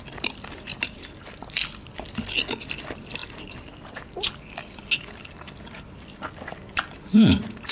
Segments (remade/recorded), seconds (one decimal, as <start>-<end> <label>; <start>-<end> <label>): 0.0-0.7 recorded; 0.7-1.5 remade; 1.5-3.2 recorded; 3.2-4.3 remade; 4.3-7.1 recorded; 7.1-7.7 remade